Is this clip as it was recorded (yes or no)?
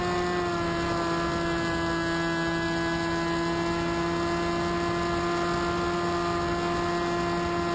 yes